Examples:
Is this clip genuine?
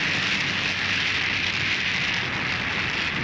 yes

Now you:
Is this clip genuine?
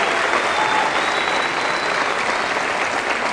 yes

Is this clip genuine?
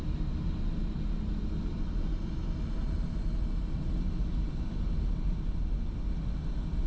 yes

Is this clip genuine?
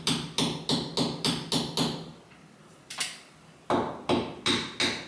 yes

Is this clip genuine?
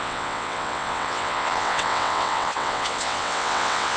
no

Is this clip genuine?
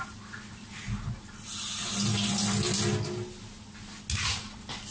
yes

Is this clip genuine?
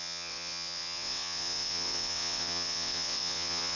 no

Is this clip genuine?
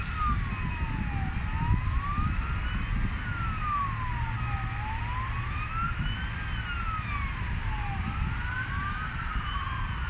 yes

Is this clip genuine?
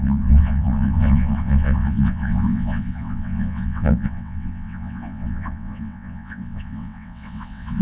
no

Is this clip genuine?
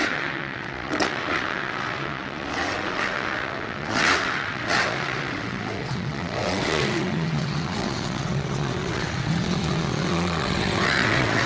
no